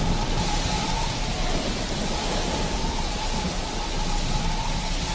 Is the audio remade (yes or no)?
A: no